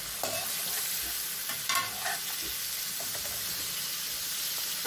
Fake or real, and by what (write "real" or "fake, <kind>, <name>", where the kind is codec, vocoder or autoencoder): real